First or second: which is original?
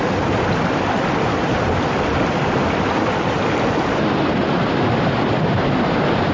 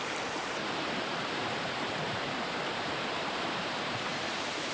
first